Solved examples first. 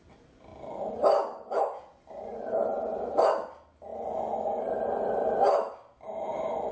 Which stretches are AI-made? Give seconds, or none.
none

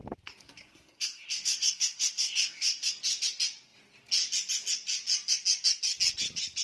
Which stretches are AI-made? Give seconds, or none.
0.4-2.9 (codec, SNAC)